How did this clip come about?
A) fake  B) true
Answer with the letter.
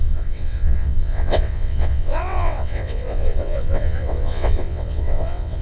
A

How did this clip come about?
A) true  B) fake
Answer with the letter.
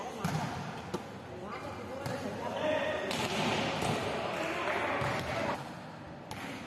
A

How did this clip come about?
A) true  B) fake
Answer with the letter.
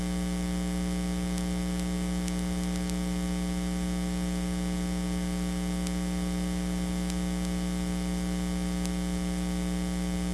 A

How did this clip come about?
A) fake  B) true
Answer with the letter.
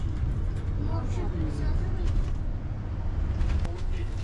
B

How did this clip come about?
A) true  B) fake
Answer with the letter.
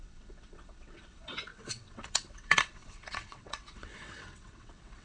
B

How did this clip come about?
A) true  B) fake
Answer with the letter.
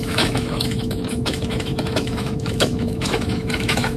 B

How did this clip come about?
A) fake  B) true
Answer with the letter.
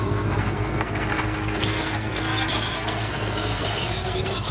A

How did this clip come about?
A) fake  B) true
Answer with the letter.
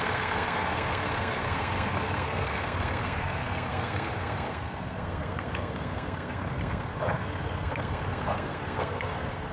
A